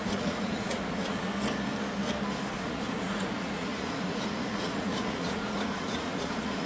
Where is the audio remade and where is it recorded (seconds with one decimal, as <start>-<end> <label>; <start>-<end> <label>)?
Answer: 0.0-1.3 remade; 1.3-2.5 recorded; 2.5-6.7 remade